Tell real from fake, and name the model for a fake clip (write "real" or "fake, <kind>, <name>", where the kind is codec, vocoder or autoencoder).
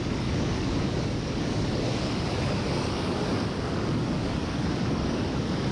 fake, codec, DAC